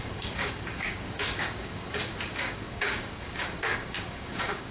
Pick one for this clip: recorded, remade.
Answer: remade